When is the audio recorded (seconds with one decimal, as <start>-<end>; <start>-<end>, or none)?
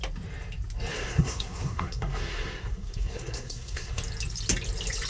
0.0-0.9; 4.0-5.1